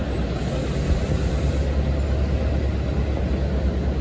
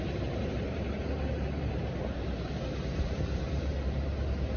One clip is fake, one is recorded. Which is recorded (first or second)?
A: first